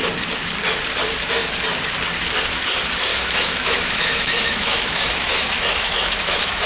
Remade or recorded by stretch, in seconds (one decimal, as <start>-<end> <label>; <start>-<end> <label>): 0.0-3.1 recorded; 3.1-6.7 remade